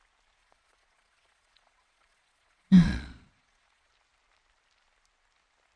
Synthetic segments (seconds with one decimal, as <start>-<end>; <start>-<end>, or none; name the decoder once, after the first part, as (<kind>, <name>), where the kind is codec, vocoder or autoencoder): 0.4-3.9 (vocoder, Vocos)